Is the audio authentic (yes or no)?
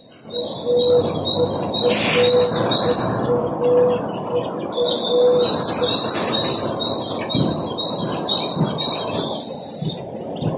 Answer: yes